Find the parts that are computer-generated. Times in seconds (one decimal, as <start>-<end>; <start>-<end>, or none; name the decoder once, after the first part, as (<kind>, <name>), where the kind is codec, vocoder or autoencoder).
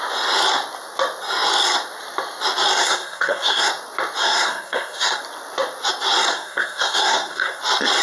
2.8-3.7 (codec, SNAC); 4.2-5.2; 6.3-7.6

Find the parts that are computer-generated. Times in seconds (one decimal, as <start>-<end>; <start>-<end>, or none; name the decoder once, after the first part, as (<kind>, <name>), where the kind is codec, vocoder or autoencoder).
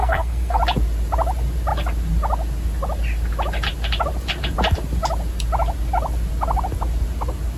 0.0-0.6 (codec, SNAC)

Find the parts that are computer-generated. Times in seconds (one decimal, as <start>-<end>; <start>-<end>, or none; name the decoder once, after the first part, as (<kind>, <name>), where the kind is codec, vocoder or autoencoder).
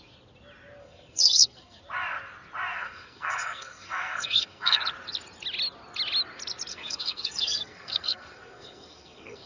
0.8-1.8 (codec, SNAC); 2.7-4.8; 6.7-9.5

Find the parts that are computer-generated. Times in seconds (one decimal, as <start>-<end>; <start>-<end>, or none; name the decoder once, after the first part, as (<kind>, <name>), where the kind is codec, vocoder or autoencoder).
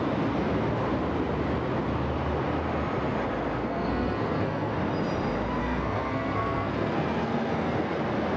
3.6-4.7 (codec, SNAC); 5.6-8.0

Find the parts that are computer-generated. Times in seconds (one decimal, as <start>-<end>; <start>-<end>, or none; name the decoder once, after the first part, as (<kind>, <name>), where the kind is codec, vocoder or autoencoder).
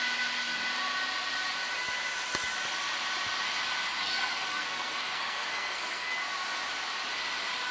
4.0-6.1 (codec, SNAC)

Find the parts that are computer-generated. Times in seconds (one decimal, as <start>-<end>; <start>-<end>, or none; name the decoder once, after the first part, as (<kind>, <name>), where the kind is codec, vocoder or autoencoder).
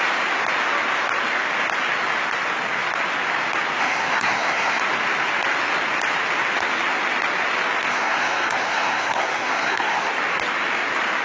3.8-4.8 (codec, SNAC); 7.9-10.1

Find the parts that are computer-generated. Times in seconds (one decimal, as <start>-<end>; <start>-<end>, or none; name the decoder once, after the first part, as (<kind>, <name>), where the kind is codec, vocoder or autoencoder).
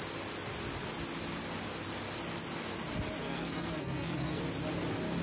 3.2-4.4 (codec, SNAC)